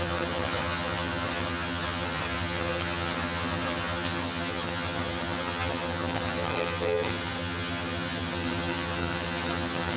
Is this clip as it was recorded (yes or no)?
no